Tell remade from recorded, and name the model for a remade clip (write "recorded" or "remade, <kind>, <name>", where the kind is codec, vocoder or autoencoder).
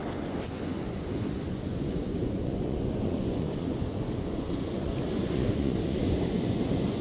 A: remade, vocoder, Vocos